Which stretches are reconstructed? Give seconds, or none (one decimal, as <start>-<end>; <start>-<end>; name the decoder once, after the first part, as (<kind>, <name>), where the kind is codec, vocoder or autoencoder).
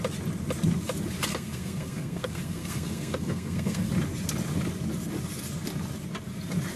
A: 1.3-3.9 (codec, SNAC)